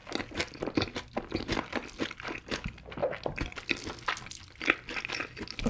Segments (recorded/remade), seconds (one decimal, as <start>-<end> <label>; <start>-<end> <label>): 0.0-5.7 recorded